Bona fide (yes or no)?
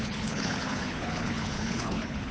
no